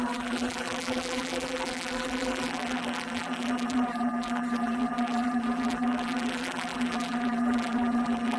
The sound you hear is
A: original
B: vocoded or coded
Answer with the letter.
B